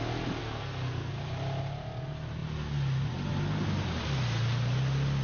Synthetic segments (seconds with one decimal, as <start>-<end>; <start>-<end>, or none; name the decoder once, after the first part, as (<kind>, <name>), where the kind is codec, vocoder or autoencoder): 0.4-1.1 (codec, SNAC)